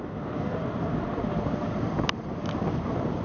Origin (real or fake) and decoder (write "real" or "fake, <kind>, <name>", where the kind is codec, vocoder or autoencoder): real